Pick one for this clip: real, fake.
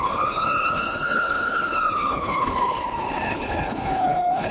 fake